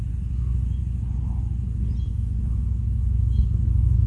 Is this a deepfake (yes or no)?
no